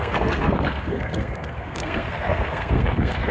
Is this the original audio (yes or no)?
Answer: no